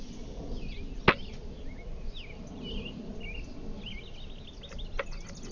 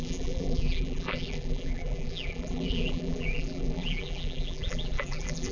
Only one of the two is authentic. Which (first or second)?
first